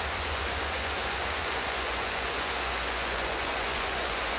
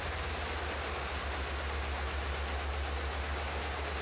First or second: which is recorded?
second